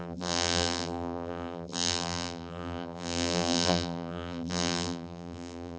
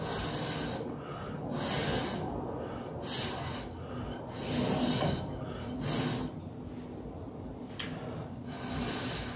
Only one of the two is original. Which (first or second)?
second